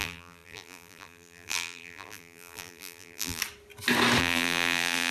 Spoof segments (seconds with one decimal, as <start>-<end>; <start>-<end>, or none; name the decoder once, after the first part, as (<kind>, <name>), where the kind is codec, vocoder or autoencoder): 0.0-3.4 (vocoder, BigVGAN v2); 4.2-5.1